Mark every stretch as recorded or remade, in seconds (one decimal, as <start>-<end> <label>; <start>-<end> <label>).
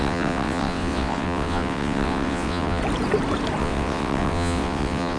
0.0-2.8 remade; 2.8-3.6 recorded; 3.6-5.2 remade